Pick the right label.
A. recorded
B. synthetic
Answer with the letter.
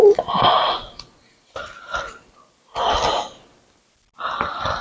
A